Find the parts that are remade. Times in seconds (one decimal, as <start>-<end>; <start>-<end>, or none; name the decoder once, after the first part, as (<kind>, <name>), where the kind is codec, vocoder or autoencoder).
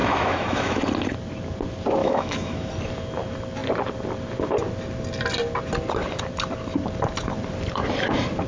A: 0.0-0.8 (autoencoder, DAC-VAE); 2.0-2.7